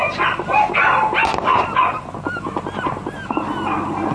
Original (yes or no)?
yes